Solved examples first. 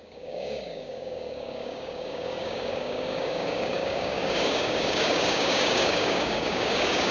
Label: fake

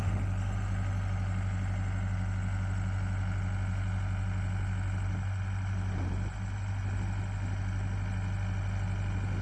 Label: real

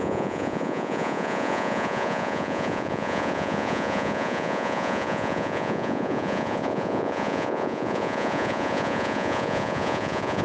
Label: fake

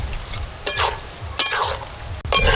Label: real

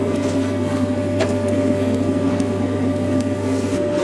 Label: fake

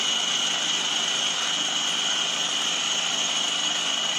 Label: real